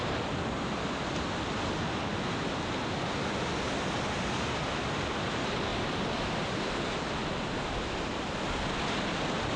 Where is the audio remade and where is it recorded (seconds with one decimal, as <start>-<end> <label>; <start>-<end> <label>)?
0.0-9.6 recorded

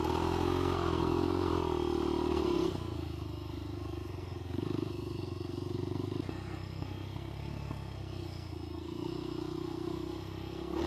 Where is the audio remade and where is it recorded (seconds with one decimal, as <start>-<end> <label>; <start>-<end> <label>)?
0.0-1.5 remade; 1.5-2.3 recorded; 2.3-10.9 remade

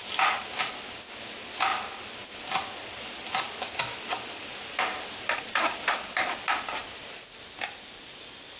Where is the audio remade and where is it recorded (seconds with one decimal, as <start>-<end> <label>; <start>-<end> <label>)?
0.0-8.6 recorded

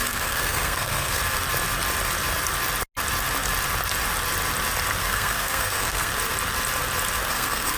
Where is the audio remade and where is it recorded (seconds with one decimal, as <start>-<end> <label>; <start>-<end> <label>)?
0.0-1.2 remade; 1.2-5.0 recorded; 5.0-6.1 remade; 6.1-7.3 recorded; 7.3-7.8 remade

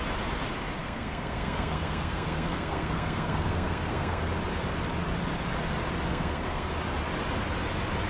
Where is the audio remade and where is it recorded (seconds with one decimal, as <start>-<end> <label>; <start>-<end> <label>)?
0.0-0.8 recorded; 0.8-4.2 remade; 4.2-6.1 recorded; 6.1-6.7 remade; 6.7-8.1 recorded